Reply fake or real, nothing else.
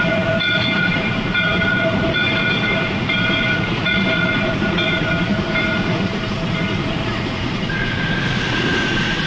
fake